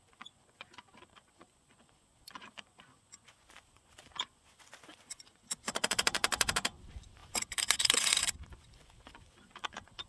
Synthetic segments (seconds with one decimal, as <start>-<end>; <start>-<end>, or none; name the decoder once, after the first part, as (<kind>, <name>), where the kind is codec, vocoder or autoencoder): 0.0-10.1 (vocoder, Vocos)